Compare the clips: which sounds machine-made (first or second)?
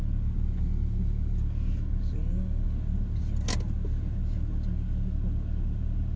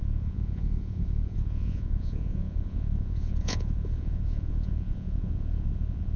second